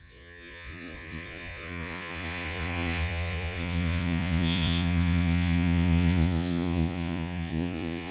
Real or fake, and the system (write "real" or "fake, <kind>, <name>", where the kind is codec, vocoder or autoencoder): fake, vocoder, Vocos